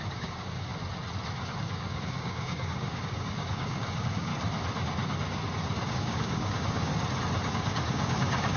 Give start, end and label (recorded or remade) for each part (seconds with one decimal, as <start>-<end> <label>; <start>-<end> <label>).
0.0-0.7 remade; 0.7-1.6 recorded; 1.6-4.3 remade; 4.3-5.9 recorded; 5.9-6.9 remade; 6.9-7.5 recorded; 7.5-8.6 remade